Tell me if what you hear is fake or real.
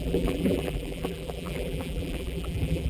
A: fake